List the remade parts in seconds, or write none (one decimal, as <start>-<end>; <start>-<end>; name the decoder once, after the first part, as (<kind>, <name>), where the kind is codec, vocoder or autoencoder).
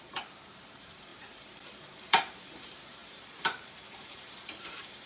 0.0-5.1 (vocoder, BigVGAN v2)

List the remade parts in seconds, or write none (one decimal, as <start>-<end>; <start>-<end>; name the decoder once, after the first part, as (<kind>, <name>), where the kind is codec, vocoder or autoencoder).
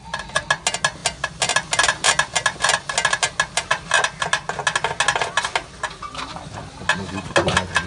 none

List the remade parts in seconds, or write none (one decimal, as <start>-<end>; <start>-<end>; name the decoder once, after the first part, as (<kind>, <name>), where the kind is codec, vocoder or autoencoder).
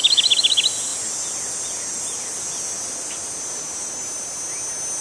0.9-3.9 (vocoder, BigVGAN v2)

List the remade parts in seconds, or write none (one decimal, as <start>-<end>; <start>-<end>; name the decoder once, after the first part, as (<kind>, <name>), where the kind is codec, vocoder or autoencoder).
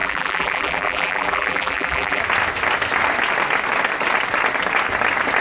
0.0-2.2 (vocoder, BigVGAN v2)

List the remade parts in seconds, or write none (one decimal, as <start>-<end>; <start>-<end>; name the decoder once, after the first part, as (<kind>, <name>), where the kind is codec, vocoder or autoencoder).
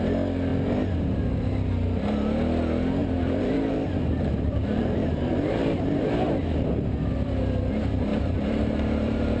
3.0-6.1 (vocoder, BigVGAN v2); 8.1-9.4